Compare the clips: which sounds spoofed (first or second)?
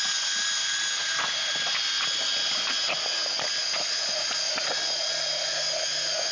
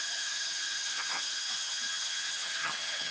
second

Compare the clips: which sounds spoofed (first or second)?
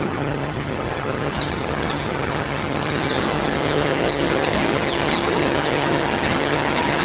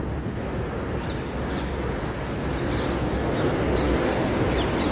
first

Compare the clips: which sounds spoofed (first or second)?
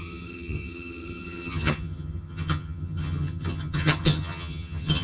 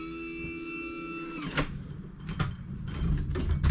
first